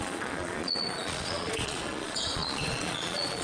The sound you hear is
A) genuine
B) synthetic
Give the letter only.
B